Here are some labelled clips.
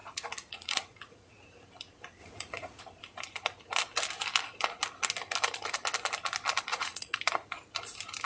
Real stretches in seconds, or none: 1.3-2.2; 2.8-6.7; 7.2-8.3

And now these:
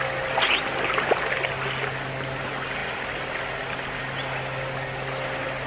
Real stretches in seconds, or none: 0.0-5.7

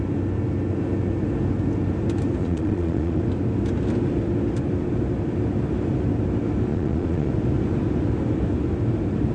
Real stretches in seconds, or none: 0.0-2.4; 3.2-6.7; 7.3-9.3

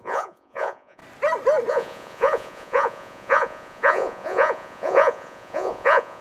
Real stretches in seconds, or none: 1.0-1.7